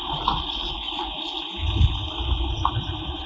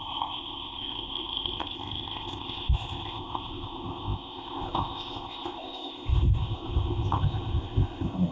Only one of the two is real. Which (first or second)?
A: first